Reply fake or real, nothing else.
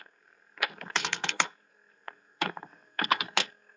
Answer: fake